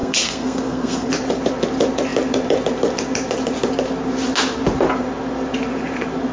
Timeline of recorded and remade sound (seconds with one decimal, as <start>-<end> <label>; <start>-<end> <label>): 0.0-1.1 remade; 1.1-6.3 recorded